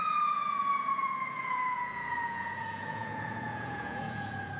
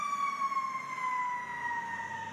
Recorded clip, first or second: second